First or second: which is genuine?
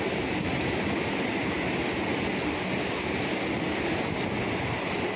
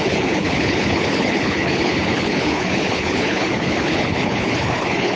first